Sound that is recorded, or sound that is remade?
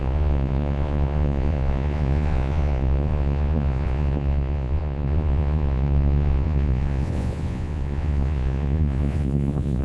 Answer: remade